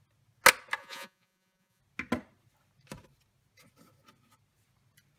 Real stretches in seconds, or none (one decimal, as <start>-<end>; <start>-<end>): 0.0-0.8; 1.8-5.2